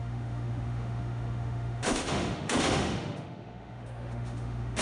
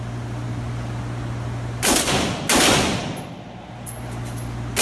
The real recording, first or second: second